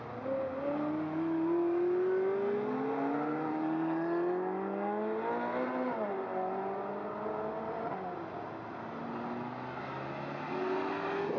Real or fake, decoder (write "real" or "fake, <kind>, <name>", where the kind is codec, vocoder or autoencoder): real